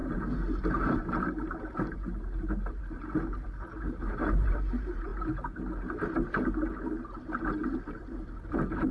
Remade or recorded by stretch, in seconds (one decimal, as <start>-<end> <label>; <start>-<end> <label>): 0.0-5.1 remade; 5.1-8.9 recorded